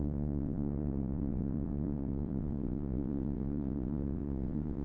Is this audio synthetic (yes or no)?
yes